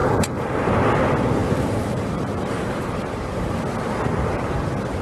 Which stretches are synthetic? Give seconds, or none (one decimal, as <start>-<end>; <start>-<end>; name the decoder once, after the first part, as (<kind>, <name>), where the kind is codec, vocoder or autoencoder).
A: 0.0-0.7 (vocoder, BigVGAN v2); 1.4-3.6